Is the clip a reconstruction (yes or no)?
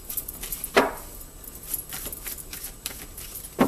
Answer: no